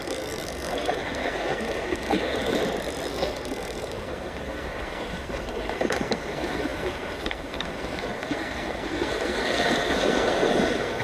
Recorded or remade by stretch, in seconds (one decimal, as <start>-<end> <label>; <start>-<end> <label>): 0.0-2.6 remade; 2.6-3.1 recorded; 3.1-11.0 remade